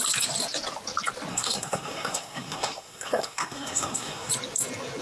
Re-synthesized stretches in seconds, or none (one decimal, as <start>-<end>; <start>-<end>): 1.3-4.3